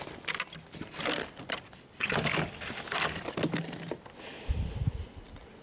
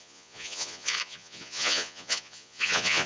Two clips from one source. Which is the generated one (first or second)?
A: second